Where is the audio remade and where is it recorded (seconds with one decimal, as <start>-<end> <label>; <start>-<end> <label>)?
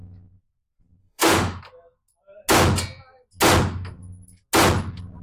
0.0-1.0 recorded; 1.0-1.6 remade; 1.6-5.2 recorded